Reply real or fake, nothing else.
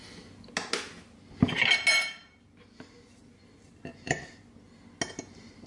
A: real